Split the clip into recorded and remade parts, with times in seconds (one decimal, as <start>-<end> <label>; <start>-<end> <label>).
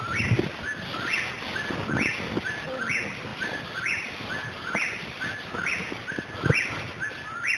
0.0-3.3 recorded; 3.3-5.9 remade; 5.9-7.6 recorded